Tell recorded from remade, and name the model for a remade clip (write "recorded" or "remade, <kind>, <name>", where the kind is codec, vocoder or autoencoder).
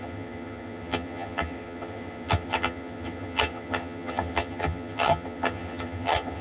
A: remade, vocoder, HiFi-GAN